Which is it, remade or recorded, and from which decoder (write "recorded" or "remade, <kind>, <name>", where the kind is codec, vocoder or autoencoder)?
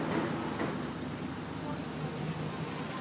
recorded